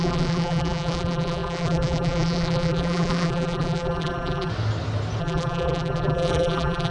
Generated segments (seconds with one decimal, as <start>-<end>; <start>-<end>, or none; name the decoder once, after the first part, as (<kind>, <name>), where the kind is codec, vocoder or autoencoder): 0.0-4.5 (vocoder, BigVGAN v2); 5.2-6.9